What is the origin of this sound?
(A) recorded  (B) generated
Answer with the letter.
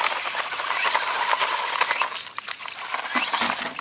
A